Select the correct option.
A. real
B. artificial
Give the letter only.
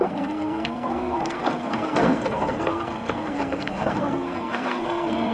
B